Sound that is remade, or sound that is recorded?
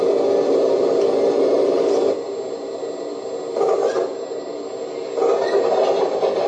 recorded